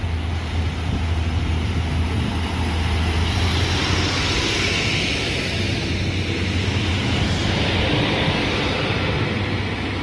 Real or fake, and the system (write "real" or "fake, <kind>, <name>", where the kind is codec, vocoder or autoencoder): real